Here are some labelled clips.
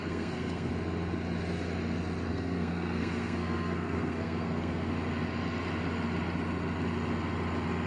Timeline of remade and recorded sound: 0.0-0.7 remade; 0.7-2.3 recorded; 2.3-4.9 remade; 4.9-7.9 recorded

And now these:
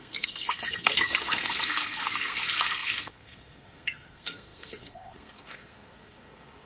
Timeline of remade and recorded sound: 0.0-6.7 remade

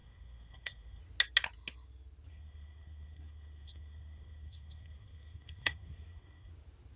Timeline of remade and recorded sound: 0.0-1.0 remade; 1.0-2.3 recorded; 2.3-6.5 remade; 6.5-7.0 recorded

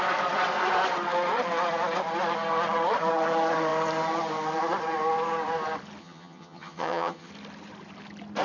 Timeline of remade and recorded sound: 0.0-6.0 recorded; 6.0-7.3 remade; 7.3-8.4 recorded

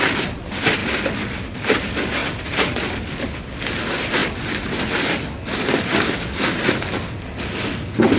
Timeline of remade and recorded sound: 0.0-2.2 recorded; 2.2-3.5 remade; 3.5-8.2 recorded

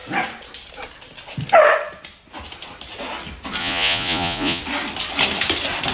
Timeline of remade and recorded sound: 0.0-3.6 recorded; 3.6-4.6 remade; 4.6-5.9 recorded

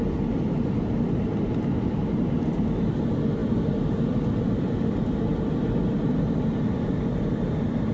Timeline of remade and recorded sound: 0.0-7.9 recorded

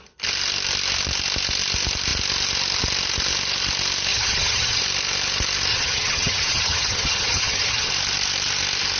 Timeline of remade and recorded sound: 0.0-4.1 recorded; 4.1-4.8 remade; 4.8-5.7 recorded; 5.7-7.9 remade; 7.9-9.0 recorded